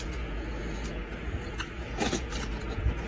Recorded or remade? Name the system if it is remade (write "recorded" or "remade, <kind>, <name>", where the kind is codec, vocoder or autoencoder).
remade, vocoder, Vocos